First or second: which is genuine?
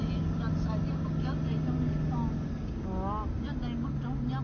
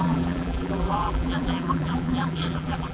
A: first